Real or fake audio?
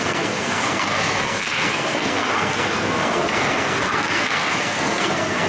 fake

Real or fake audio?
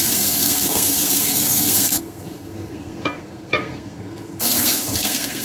fake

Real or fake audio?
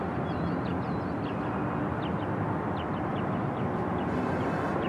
real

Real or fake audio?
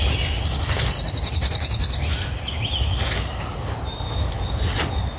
real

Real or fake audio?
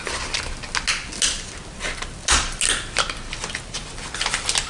real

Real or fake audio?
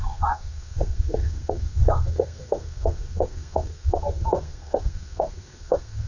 fake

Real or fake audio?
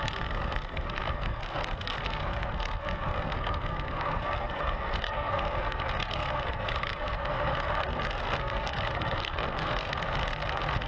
fake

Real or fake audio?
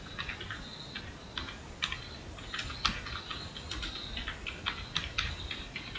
real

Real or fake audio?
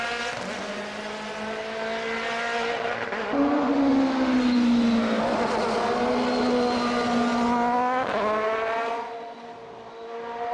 real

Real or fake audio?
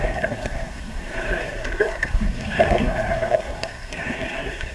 fake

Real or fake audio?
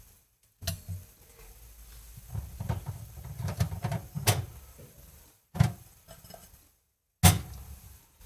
real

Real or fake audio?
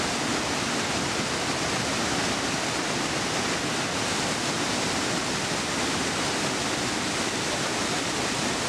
real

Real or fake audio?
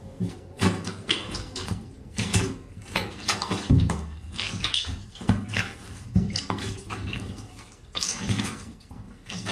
fake